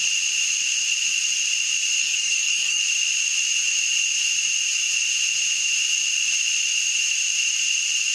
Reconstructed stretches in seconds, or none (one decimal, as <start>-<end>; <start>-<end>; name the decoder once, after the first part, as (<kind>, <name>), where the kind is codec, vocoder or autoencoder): 2.0-2.8 (codec, DAC)